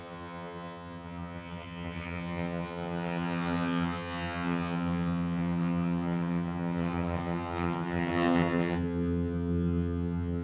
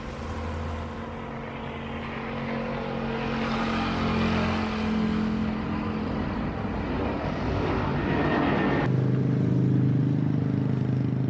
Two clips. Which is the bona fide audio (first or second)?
second